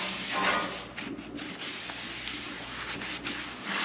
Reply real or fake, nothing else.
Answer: real